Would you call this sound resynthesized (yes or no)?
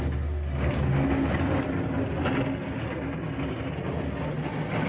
no